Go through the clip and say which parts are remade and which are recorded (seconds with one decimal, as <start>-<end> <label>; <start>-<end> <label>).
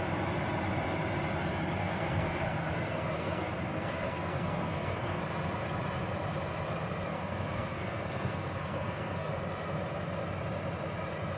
0.0-1.8 recorded; 1.8-5.2 remade; 5.2-7.1 recorded; 7.1-9.3 remade; 9.3-11.4 recorded